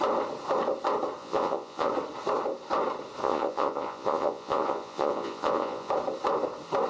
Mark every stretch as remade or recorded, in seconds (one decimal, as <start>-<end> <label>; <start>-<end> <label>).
0.0-1.2 recorded; 1.2-1.9 remade; 1.9-3.2 recorded; 3.2-5.9 remade; 5.9-6.9 recorded